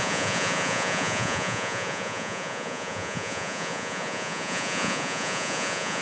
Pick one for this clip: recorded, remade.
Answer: remade